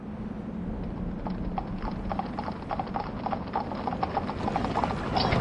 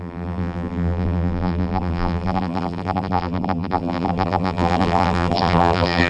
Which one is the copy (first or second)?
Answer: second